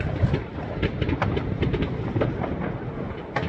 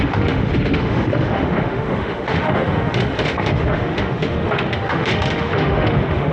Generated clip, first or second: second